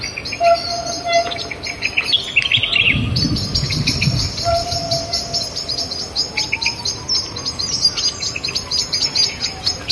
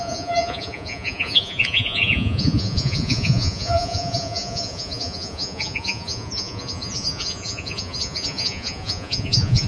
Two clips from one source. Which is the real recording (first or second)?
first